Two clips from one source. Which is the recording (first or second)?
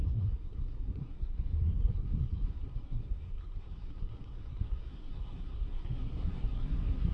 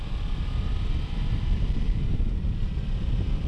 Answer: second